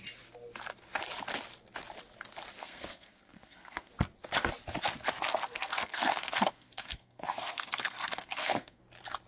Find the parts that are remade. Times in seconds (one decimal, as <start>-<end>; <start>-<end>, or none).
2.6-3.9; 5.3-8.8